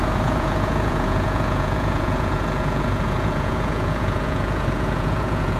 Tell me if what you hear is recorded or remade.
remade